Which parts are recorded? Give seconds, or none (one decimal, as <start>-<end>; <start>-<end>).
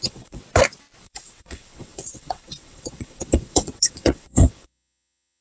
0.4-1.0